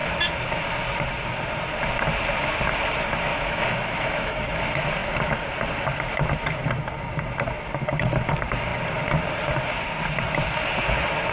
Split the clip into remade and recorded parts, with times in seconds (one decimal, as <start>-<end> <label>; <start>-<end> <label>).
0.0-3.3 recorded; 3.3-4.6 remade; 4.6-11.3 recorded